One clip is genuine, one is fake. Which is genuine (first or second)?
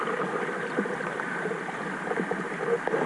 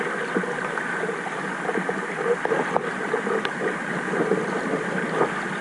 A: second